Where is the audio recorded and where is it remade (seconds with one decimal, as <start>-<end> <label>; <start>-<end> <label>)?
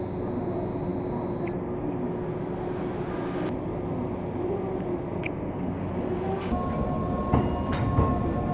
0.0-8.5 recorded